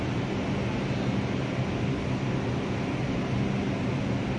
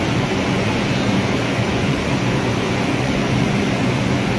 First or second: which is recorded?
first